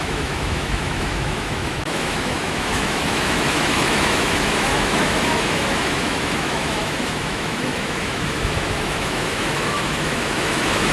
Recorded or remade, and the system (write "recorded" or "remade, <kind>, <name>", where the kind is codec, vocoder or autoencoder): remade, autoencoder, DAC-VAE